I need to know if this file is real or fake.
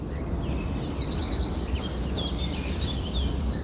real